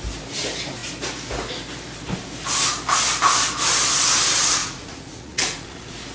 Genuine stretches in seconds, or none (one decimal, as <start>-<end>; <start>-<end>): 0.0-4.6